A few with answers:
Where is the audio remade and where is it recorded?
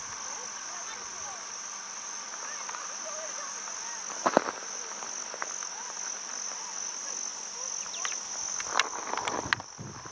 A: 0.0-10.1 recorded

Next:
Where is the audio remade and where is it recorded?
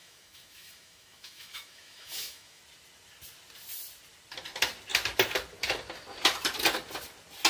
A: 0.0-2.6 remade; 2.6-7.5 recorded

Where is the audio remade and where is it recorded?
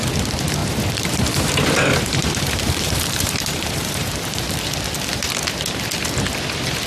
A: 0.0-0.6 recorded; 0.6-4.5 remade; 4.5-6.9 recorded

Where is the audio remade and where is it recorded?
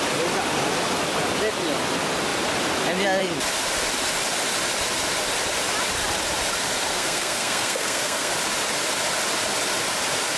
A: 0.0-6.9 recorded; 6.9-8.3 remade; 8.3-10.4 recorded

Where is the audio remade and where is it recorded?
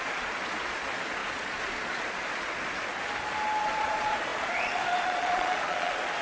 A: 0.0-2.9 remade; 2.9-3.6 recorded; 3.6-6.2 remade